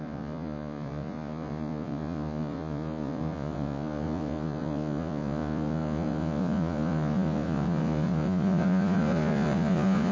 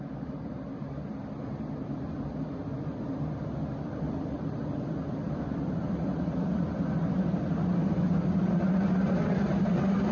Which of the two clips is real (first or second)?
second